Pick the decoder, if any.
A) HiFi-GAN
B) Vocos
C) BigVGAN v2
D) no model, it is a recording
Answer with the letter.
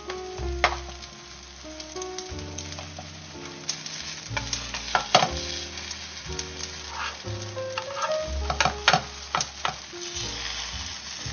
D